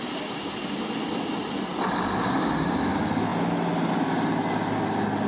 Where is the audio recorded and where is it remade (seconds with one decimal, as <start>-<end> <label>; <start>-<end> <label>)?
0.0-5.3 recorded